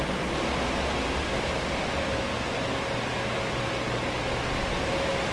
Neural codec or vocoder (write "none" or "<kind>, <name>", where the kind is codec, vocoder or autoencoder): none